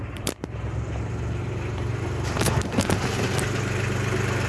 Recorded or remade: remade